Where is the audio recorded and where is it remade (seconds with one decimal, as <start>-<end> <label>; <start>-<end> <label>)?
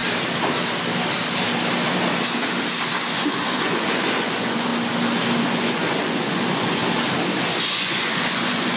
0.0-3.1 recorded; 3.1-4.7 remade; 4.7-5.4 recorded; 5.4-6.8 remade; 6.8-7.5 recorded; 7.5-8.8 remade